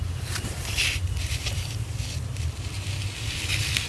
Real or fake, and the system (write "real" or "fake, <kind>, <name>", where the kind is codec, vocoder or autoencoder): fake, vocoder, BigVGAN v2